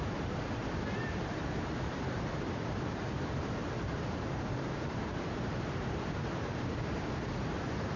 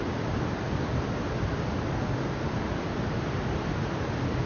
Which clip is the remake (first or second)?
first